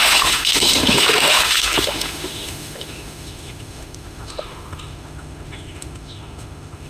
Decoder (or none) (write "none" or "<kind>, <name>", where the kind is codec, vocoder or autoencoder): autoencoder, DAC-VAE